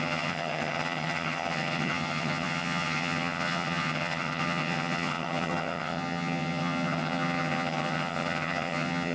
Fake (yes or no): yes